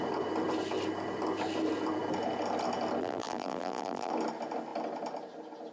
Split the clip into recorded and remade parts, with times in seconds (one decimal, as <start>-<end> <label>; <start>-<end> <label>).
0.0-3.0 recorded; 3.0-4.1 remade; 4.1-5.7 recorded